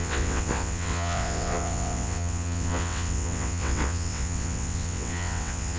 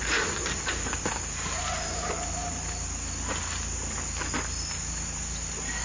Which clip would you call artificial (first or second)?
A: first